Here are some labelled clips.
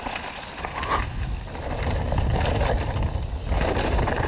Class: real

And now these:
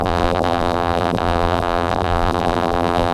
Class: fake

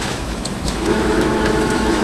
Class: fake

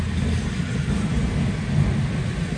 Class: real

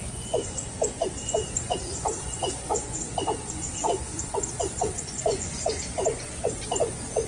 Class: fake